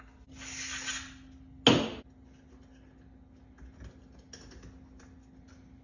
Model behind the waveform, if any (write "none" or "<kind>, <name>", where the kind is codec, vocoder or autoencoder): none